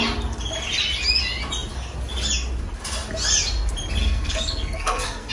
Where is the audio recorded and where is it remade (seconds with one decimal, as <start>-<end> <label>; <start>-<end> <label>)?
0.0-4.0 recorded; 4.0-5.3 remade